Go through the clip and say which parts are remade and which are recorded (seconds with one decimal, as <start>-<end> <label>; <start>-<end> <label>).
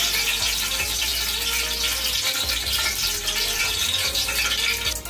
0.0-5.1 recorded